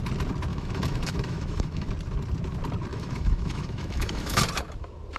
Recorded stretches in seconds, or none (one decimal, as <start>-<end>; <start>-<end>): 0.0-0.5; 1.9-2.9; 4.4-5.2